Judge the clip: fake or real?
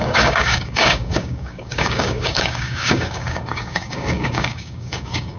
fake